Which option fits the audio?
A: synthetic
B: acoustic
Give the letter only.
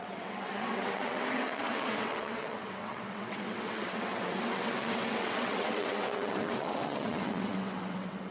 A